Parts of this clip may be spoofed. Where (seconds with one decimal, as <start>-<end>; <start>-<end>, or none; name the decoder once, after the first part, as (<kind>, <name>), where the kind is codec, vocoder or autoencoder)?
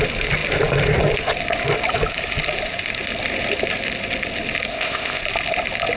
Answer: 4.7-5.2 (codec, ZipCodec)